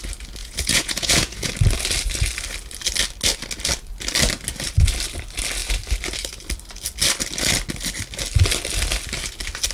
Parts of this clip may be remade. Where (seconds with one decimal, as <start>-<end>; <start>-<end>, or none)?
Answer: 0.4-1.5